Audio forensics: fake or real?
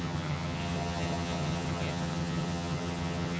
fake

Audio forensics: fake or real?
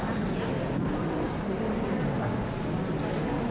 real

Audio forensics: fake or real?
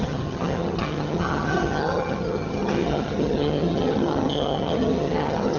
fake